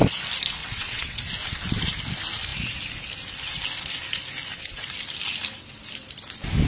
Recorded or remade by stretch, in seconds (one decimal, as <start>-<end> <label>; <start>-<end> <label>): 0.0-0.6 recorded; 0.6-1.2 remade; 1.2-6.7 recorded

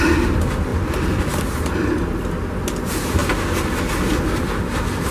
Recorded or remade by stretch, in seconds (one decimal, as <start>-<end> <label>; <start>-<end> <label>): 0.0-0.7 recorded; 0.7-2.4 remade; 2.4-5.1 recorded